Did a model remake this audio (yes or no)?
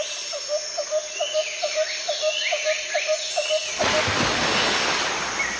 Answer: no